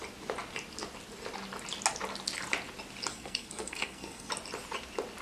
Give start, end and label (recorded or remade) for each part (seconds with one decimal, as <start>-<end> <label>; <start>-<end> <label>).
0.0-3.1 recorded; 3.1-4.3 remade; 4.3-5.2 recorded